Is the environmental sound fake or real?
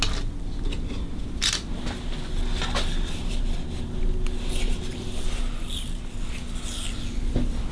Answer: real